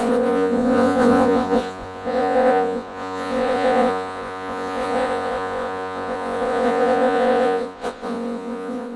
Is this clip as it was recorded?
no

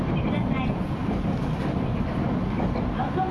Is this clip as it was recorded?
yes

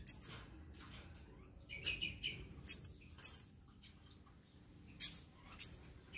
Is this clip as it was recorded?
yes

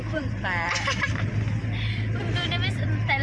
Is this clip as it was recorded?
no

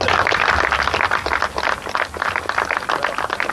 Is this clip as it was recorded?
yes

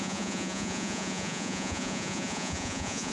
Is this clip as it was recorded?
no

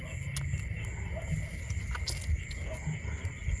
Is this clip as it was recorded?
yes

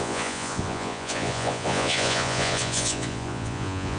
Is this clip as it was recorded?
no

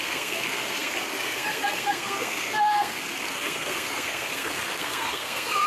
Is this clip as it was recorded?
no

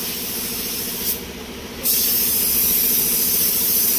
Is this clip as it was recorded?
yes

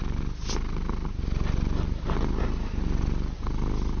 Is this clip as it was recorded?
yes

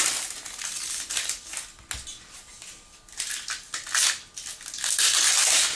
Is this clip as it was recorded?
yes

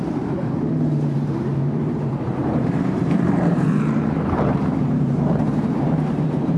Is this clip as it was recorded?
no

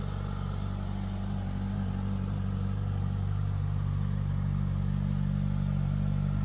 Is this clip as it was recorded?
yes